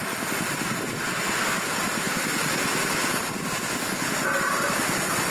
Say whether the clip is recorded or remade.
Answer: recorded